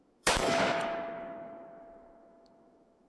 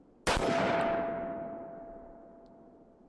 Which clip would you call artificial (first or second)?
first